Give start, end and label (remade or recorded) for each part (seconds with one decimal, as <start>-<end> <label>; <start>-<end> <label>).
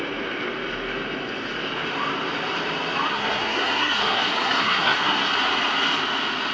0.0-3.1 recorded; 3.1-5.3 remade; 5.3-6.5 recorded